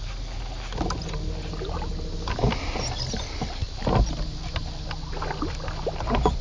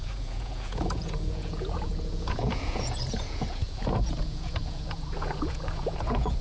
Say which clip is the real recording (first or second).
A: first